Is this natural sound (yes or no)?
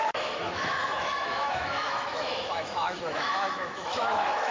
no